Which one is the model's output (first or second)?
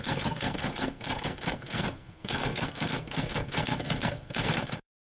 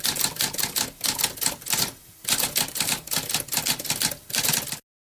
first